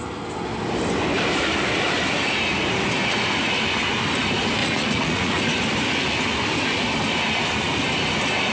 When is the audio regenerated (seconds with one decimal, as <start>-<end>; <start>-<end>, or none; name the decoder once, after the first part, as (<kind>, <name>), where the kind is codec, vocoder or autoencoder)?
4.6-5.4 (vocoder, Vocos)